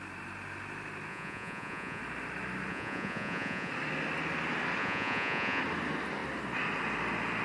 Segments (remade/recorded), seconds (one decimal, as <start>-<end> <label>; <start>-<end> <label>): 0.0-1.1 recorded; 1.1-2.0 remade; 2.0-2.7 recorded; 2.7-3.7 remade; 3.7-4.8 recorded; 4.8-5.6 remade; 5.6-7.4 recorded